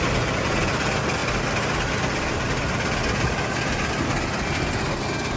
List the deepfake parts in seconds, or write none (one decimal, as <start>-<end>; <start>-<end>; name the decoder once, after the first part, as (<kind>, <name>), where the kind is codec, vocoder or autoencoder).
none